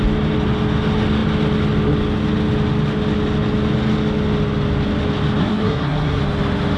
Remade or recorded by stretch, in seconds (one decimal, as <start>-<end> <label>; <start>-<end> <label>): 0.0-5.4 recorded; 5.4-6.2 remade; 6.2-6.8 recorded